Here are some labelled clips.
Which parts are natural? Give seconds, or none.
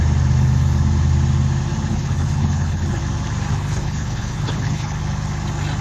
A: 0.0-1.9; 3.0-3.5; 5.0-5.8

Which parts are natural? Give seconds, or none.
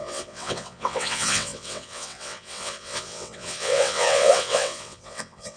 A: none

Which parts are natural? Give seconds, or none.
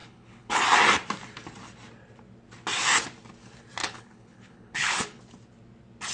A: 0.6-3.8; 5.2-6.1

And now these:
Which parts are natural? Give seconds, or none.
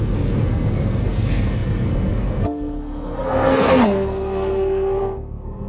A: none